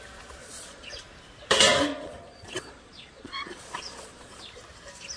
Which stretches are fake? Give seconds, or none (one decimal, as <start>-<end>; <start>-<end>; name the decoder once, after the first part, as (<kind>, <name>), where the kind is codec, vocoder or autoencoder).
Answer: 0.4-0.9 (vocoder, Vocos); 1.9-4.4